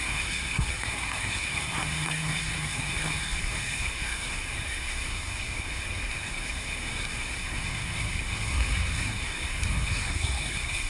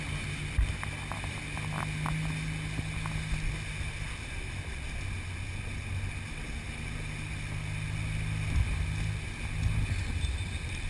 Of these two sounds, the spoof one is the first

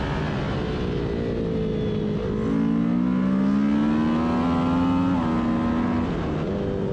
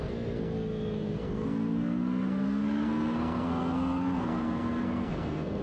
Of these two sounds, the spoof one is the second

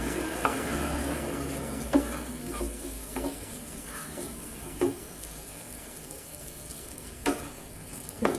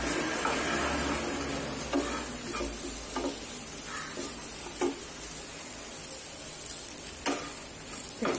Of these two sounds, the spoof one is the first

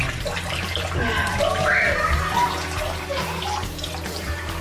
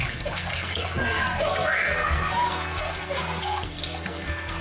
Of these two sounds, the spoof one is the second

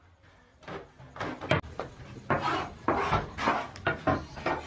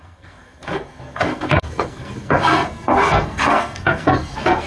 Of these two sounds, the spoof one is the second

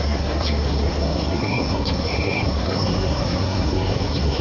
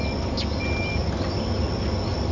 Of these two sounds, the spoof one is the first